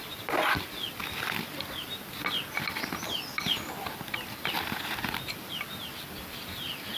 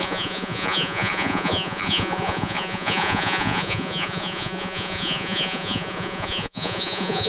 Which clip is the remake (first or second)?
second